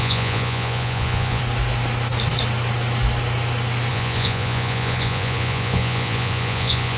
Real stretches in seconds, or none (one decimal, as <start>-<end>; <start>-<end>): 1.4-3.9